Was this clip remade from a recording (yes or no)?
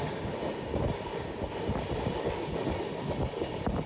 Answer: no